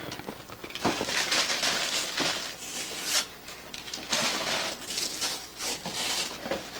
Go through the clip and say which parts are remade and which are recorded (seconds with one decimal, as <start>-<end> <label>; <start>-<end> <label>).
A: 0.0-0.6 recorded; 0.6-4.7 remade; 4.7-5.5 recorded; 5.5-6.8 remade

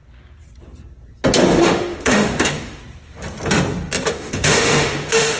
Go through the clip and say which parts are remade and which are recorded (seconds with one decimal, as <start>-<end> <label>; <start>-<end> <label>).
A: 0.0-1.6 recorded; 1.6-2.8 remade; 2.8-4.1 recorded; 4.1-5.4 remade

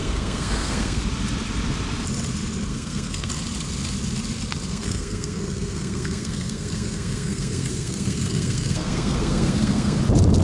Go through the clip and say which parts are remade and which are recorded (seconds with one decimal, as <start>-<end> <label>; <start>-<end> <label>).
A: 0.0-1.0 remade; 1.0-2.7 recorded; 2.7-3.3 remade; 3.3-4.7 recorded; 4.7-10.0 remade; 10.0-10.4 recorded

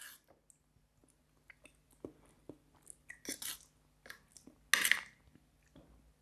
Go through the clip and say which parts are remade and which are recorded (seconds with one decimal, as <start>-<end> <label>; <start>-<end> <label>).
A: 0.0-6.2 recorded

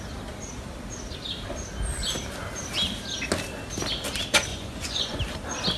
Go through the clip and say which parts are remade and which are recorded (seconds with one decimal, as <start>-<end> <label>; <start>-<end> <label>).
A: 0.0-4.5 recorded; 4.5-5.2 remade; 5.2-5.8 recorded

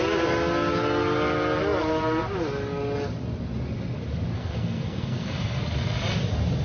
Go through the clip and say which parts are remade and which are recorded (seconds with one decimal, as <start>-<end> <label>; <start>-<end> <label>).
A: 0.0-4.3 recorded; 4.3-5.6 remade; 5.6-6.6 recorded

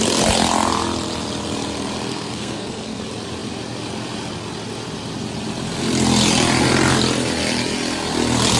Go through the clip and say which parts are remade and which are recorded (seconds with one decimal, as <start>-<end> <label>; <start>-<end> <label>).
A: 0.0-2.1 recorded; 2.1-3.0 remade; 3.0-8.6 recorded

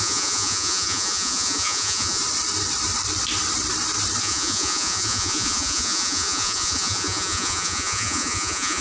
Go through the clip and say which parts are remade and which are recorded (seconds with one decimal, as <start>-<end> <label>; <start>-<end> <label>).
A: 0.0-2.2 remade; 2.2-4.2 recorded; 4.2-8.8 remade